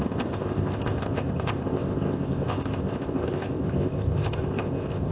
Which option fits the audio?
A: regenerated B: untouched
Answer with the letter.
A